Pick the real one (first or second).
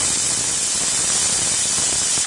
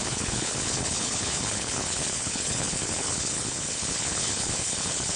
first